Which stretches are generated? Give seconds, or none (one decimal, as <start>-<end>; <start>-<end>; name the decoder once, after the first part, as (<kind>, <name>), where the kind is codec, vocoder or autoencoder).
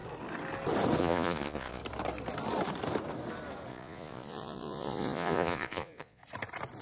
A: 1.0-1.8 (vocoder, Vocos); 3.7-6.2